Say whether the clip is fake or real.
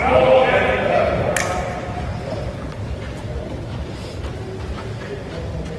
real